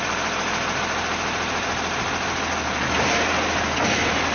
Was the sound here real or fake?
real